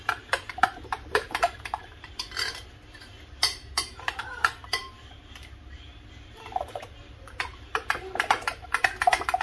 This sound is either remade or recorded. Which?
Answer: remade